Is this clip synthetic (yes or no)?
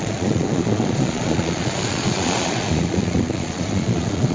yes